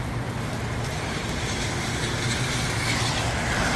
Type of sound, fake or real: real